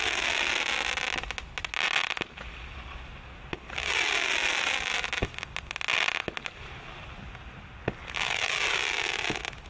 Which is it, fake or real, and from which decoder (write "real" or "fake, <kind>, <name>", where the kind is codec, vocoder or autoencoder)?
real